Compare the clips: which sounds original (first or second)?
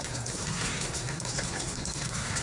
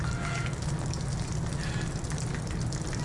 second